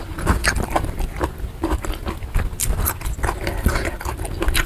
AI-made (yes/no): no